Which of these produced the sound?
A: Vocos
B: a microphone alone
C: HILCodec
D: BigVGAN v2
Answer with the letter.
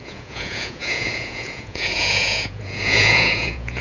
A